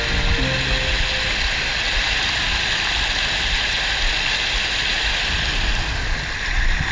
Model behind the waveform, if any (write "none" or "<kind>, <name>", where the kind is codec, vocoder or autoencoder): none